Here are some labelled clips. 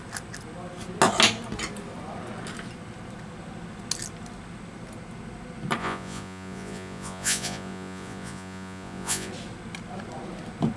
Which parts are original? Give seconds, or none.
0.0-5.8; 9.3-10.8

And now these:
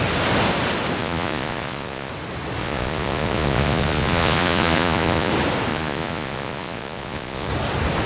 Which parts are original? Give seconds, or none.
0.0-1.0; 2.1-2.6; 5.3-5.7; 7.5-8.1

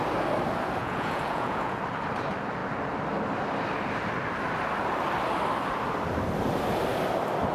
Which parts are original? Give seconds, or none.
0.0-0.8; 1.8-7.5

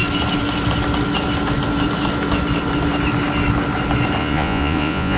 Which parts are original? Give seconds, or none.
0.0-4.2